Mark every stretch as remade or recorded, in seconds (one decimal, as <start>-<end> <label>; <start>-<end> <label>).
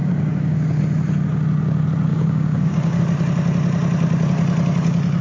0.0-0.8 remade; 0.8-2.1 recorded; 2.1-3.0 remade; 3.0-5.2 recorded